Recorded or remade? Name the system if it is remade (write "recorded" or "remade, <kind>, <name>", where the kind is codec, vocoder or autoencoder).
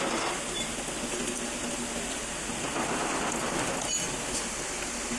recorded